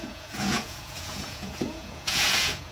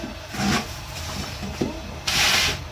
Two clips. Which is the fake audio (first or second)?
first